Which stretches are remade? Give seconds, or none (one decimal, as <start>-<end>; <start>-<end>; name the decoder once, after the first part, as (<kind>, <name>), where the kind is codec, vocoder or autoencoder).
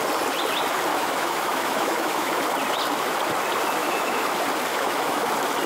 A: 0.9-2.4 (autoencoder, DAC-VAE); 3.8-4.3; 4.7-5.3